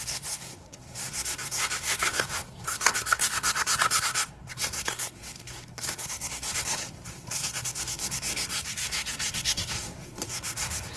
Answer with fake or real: fake